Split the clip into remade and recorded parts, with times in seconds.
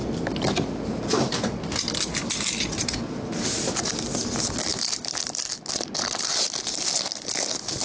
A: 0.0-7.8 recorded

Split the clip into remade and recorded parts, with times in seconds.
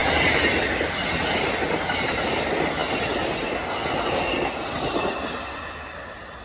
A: 0.0-6.4 recorded